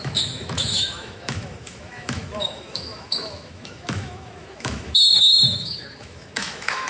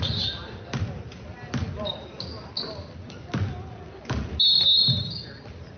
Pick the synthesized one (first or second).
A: first